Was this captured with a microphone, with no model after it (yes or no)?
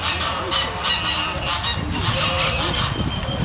yes